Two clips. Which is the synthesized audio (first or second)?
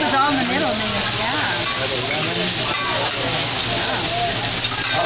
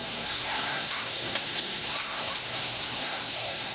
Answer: second